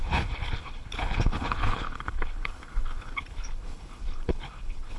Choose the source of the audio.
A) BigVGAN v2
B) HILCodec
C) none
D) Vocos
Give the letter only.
B